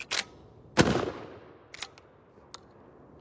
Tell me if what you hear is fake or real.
real